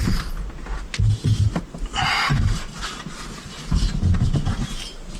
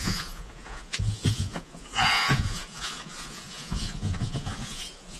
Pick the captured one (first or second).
first